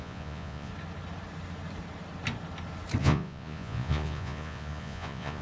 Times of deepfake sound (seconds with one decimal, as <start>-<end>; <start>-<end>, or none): 0.0-0.7; 3.0-5.4